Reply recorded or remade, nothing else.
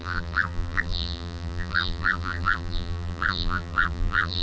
remade